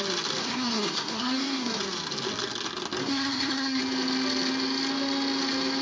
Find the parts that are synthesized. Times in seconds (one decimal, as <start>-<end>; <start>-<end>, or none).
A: 0.4-1.8; 3.0-3.8

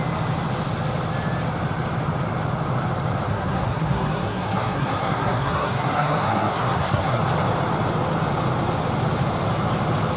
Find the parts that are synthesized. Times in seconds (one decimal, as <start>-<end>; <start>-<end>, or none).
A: 3.3-7.2

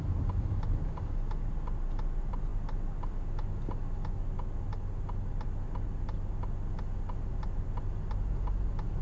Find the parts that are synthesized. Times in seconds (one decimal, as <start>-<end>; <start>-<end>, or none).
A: none

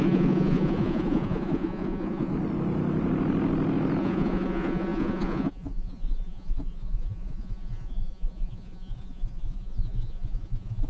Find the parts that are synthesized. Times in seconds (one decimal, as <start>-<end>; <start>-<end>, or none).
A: 0.0-2.3; 4.0-10.9